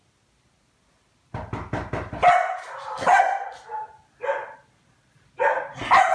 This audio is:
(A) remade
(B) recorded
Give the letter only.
B